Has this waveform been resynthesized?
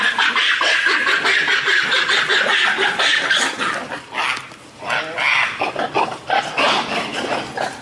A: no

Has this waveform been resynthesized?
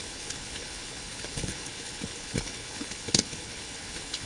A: yes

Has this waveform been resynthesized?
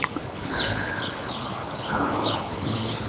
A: yes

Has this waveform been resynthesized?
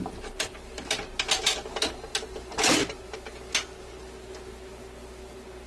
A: no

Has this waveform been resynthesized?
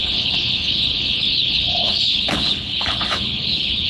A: yes